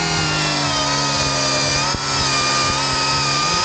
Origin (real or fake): real